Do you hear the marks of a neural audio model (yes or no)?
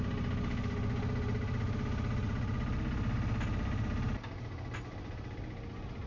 no